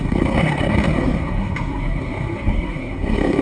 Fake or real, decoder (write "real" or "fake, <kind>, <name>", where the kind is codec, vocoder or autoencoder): fake, codec, SNAC